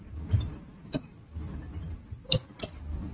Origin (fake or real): fake